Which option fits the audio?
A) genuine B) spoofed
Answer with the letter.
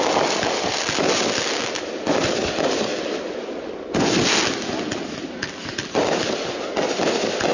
A